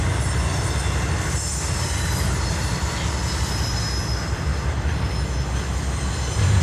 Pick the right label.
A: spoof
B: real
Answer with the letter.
B